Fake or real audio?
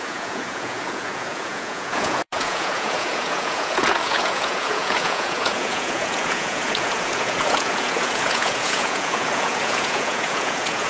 fake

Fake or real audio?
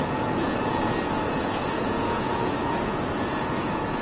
fake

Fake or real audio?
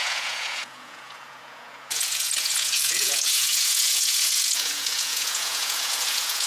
fake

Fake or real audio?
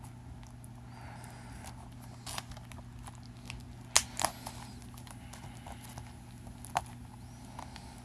real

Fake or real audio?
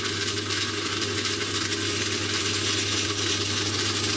real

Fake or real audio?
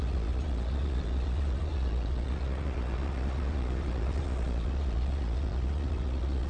fake